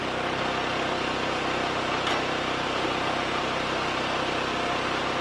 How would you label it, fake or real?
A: real